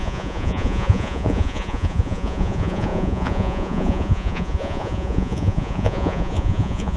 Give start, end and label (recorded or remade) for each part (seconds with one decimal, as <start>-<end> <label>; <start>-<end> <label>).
0.0-7.0 remade